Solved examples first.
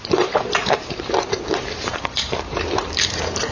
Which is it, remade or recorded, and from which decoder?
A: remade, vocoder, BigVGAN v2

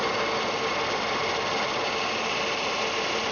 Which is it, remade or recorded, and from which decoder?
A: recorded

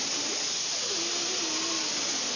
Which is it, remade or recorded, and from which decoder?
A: recorded